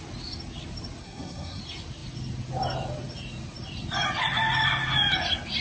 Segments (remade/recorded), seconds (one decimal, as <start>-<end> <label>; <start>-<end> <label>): 0.0-1.0 recorded; 1.0-1.6 remade; 1.6-5.6 recorded